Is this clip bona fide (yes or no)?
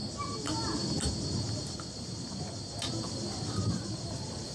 yes